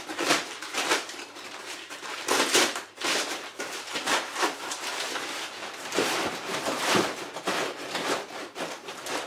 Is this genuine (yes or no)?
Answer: no